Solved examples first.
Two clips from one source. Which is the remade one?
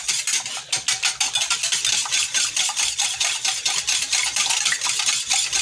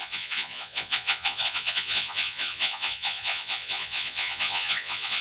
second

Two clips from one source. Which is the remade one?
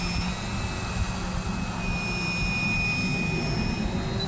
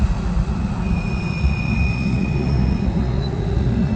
second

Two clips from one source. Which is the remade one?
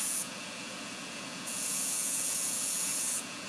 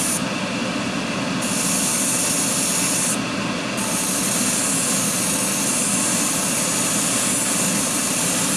first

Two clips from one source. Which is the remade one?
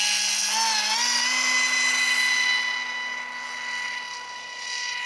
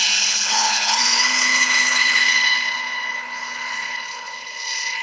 second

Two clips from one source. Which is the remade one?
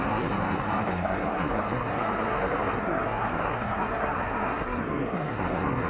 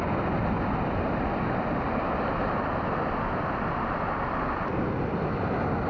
first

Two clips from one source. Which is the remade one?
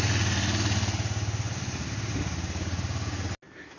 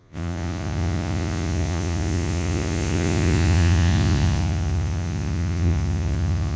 second